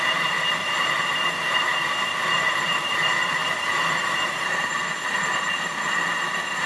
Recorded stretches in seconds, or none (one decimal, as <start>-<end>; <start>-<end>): none

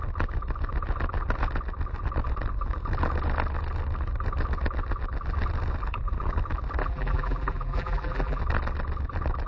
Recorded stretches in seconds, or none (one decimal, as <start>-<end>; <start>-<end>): 0.0-6.8; 8.4-9.5

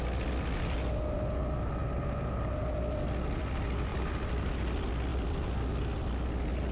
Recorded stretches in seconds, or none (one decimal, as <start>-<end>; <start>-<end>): 0.0-3.9; 4.5-5.1; 5.8-6.7

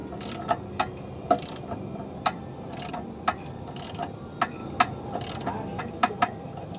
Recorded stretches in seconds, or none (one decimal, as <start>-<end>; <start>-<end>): 0.0-2.9; 4.6-5.8

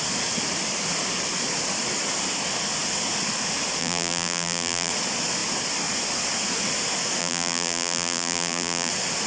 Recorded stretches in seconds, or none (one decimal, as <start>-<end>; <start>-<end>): 0.0-3.8; 4.9-7.2; 8.9-9.3

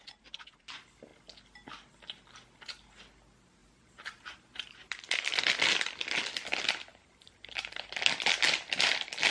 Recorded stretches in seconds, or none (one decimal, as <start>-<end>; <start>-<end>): 0.0-3.6; 5.4-6.9; 8.0-9.3

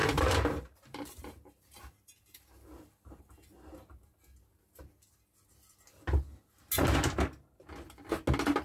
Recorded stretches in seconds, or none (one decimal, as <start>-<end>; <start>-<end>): 3.2-8.6

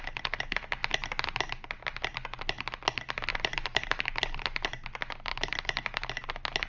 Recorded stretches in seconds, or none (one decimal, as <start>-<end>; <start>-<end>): 0.0-3.3; 4.0-5.3; 6.1-6.7